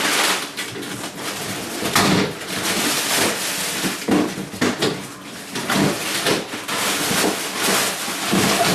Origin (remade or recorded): recorded